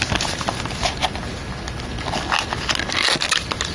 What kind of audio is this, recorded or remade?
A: recorded